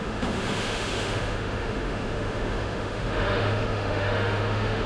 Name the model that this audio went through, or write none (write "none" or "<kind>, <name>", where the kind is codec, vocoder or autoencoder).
autoencoder, DAC-VAE